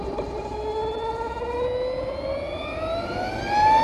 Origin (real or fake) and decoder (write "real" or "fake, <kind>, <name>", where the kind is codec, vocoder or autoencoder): real